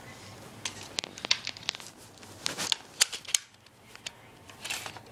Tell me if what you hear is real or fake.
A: real